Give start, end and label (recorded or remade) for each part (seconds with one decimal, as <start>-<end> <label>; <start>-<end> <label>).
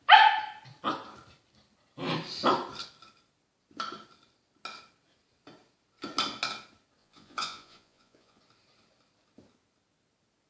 0.0-7.0 recorded; 7.0-8.4 remade; 8.4-10.5 recorded